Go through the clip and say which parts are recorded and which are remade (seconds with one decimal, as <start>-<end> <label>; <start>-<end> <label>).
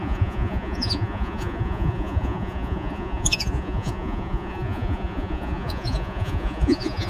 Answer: 0.0-7.1 remade